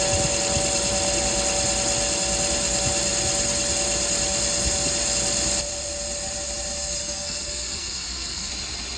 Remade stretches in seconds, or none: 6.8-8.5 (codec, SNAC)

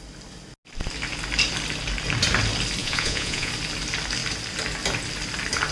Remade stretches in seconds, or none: 2.8-3.5 (vocoder, Vocos)

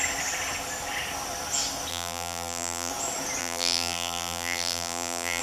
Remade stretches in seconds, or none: 1.9-2.9 (vocoder, BigVGAN v2); 3.4-5.4

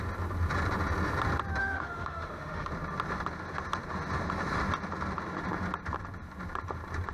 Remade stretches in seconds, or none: 1.6-2.7 (autoencoder, DAC-VAE)

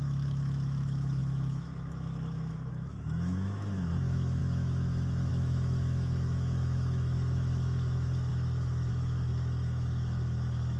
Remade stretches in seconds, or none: 0.0-10.8 (autoencoder, DAC-VAE)